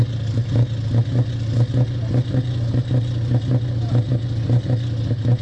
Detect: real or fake real